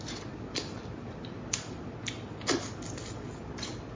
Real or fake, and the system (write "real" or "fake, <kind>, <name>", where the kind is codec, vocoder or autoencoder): real